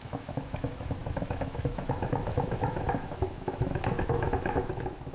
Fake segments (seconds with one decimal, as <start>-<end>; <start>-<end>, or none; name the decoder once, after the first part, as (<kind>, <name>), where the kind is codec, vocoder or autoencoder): 0.0-5.1 (autoencoder, DAC-VAE)